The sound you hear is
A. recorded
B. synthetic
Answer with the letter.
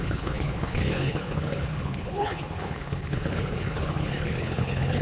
B